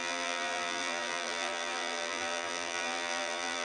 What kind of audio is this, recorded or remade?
remade